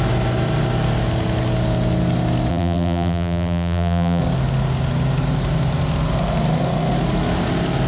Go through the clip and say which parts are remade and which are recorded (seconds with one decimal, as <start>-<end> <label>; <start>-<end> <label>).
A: 0.0-2.5 recorded; 2.5-4.2 remade; 4.2-7.9 recorded